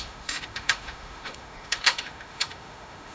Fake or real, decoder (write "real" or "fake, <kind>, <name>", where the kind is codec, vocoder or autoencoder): fake, autoencoder, DAC-VAE